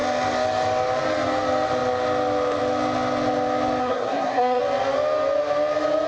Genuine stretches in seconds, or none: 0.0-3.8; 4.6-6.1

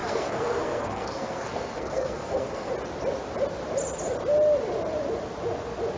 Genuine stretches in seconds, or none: 2.7-6.0

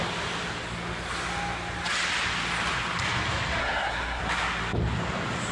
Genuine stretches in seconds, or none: 0.0-3.6; 4.2-5.5

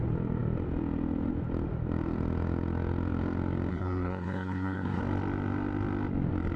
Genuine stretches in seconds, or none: 0.0-3.7; 5.0-6.6

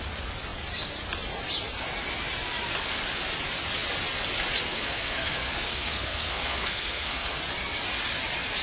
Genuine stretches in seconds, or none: 0.0-4.6; 7.4-8.6

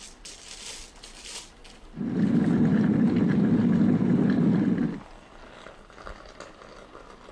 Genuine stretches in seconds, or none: 0.0-7.3

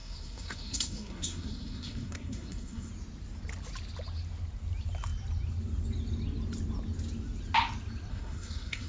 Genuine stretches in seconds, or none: 2.9-8.1